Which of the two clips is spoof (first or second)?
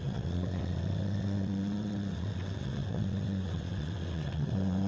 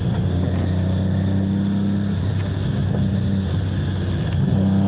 first